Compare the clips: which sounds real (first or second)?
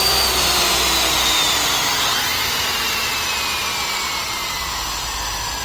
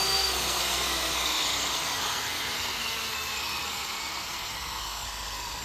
first